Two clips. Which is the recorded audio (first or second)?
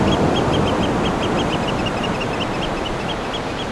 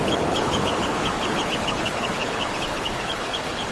first